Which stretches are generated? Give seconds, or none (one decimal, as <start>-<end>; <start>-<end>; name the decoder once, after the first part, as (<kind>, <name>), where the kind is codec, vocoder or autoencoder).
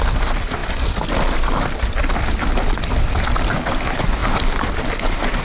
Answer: none